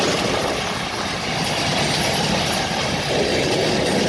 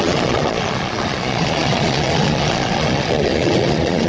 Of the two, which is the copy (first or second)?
second